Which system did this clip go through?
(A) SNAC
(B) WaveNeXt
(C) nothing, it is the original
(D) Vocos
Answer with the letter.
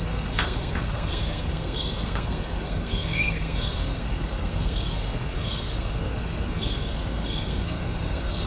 A